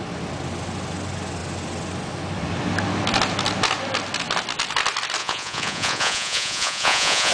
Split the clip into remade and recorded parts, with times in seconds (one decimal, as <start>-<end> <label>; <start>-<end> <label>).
0.0-5.2 recorded; 5.2-7.3 remade